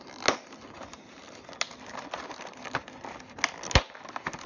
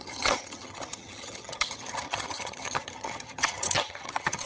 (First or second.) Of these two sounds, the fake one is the second